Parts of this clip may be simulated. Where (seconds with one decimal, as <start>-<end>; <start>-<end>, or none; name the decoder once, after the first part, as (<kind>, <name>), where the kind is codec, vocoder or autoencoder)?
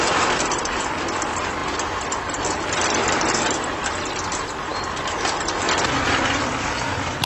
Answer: none